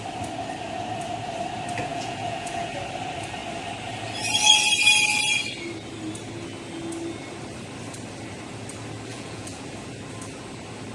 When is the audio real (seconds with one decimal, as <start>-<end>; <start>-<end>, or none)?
0.0-1.9; 2.7-9.1; 9.6-10.9